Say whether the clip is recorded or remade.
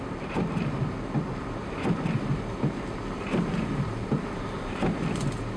recorded